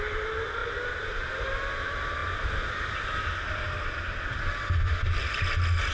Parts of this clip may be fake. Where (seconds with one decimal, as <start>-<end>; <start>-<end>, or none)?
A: none